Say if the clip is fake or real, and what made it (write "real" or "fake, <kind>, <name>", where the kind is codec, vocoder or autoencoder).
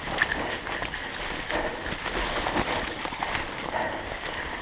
real